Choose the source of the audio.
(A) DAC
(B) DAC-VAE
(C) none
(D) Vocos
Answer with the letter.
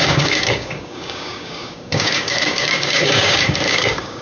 A